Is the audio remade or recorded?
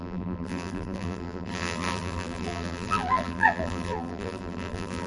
remade